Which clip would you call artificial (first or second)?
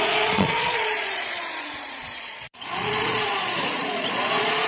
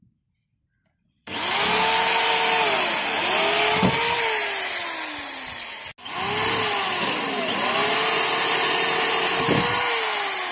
first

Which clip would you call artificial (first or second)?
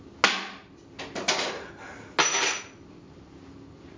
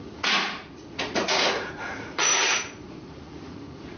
second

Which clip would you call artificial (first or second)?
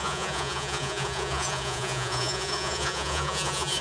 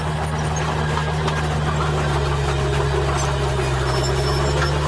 first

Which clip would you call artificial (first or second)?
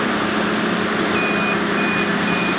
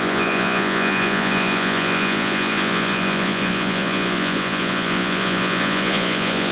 second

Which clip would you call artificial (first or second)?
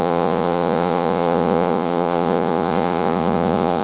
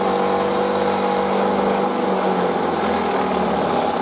first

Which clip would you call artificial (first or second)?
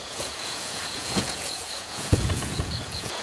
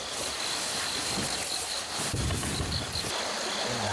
first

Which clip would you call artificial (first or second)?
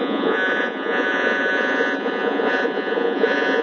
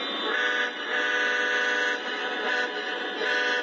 first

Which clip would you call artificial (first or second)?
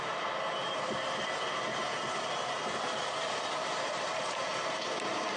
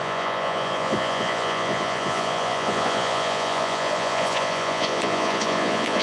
second